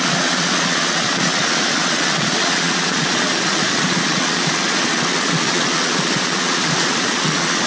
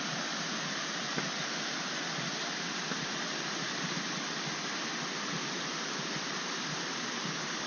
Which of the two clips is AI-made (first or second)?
first